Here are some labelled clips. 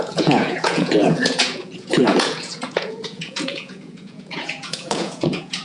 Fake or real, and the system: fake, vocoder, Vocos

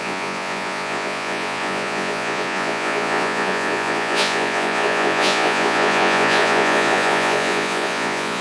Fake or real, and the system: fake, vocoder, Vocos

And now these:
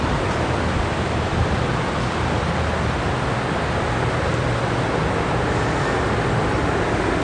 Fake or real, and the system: real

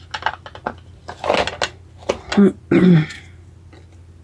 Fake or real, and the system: real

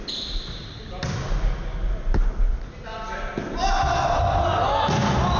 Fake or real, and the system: real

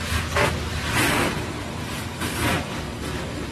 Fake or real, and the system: real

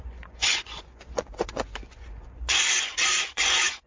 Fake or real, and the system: fake, vocoder, Vocos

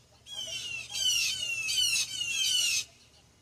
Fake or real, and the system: real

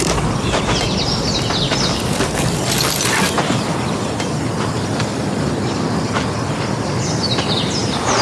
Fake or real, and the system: real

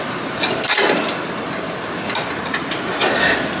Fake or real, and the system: real